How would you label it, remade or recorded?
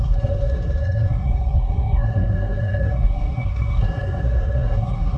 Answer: remade